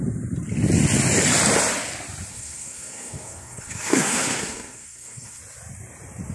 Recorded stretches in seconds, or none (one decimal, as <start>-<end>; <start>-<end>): 0.0-2.3; 5.4-6.3